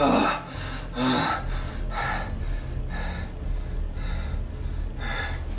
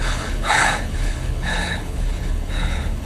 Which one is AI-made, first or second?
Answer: second